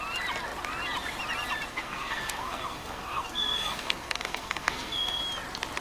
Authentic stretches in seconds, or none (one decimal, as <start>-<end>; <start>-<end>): 0.0-1.7; 5.2-5.8